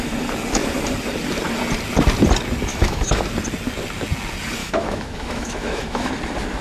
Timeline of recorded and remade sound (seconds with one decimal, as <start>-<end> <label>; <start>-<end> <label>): 0.0-2.7 recorded; 2.7-3.2 remade; 3.2-4.6 recorded; 4.6-6.1 remade; 6.1-6.6 recorded